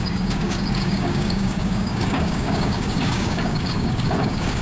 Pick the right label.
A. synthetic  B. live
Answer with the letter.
A